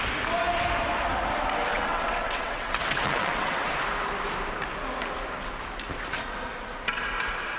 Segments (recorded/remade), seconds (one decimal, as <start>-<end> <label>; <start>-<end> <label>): 0.0-1.7 recorded; 1.7-3.7 remade; 3.7-7.6 recorded